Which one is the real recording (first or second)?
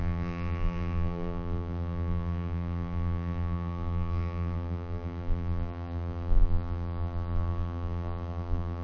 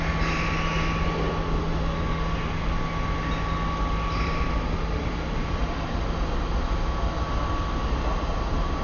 second